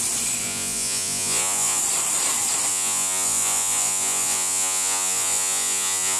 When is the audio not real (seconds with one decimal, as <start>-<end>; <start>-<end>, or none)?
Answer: 0.4-1.8; 2.7-6.2